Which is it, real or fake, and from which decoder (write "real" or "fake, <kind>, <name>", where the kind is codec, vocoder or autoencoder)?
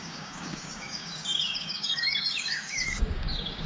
fake, codec, DAC